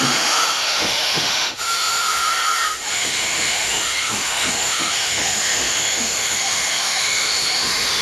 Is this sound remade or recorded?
remade